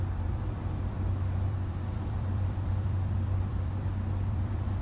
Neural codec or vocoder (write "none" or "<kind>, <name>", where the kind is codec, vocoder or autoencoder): vocoder, BigVGAN v2